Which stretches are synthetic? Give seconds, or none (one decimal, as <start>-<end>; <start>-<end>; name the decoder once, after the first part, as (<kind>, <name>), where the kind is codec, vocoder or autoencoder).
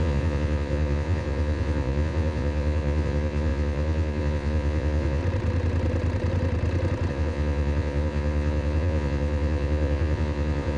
0.0-5.2 (vocoder, Vocos); 7.1-10.8